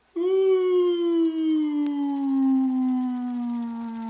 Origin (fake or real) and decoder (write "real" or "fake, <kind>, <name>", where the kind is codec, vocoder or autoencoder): real